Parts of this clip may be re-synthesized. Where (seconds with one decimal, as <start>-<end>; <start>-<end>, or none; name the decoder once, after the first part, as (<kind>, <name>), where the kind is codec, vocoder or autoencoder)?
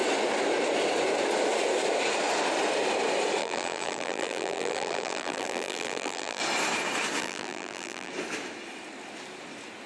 3.4-6.4 (vocoder, BigVGAN v2); 7.2-8.1